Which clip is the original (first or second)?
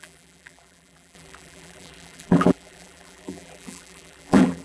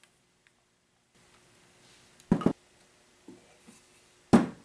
second